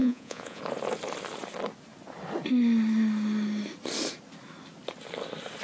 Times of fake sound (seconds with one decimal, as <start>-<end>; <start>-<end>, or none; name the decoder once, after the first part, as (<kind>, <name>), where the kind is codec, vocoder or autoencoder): 0.0-0.6 (vocoder, Vocos)